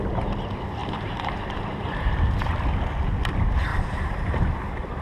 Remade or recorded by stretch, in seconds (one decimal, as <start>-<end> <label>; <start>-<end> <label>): 0.0-0.8 recorded; 0.8-2.1 remade; 2.1-3.7 recorded; 3.7-5.0 remade